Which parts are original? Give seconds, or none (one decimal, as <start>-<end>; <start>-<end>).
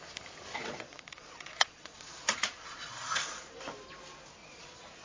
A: 0.0-0.5; 3.5-4.4